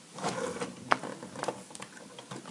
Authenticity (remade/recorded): recorded